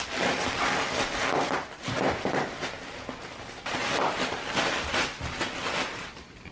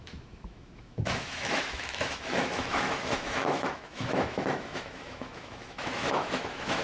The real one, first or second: first